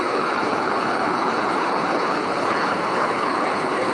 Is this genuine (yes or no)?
no